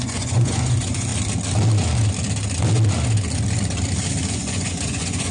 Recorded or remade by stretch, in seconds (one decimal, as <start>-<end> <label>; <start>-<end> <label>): 0.0-1.1 remade; 1.1-4.3 recorded; 4.3-5.3 remade